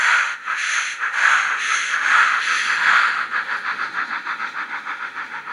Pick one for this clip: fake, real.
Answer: fake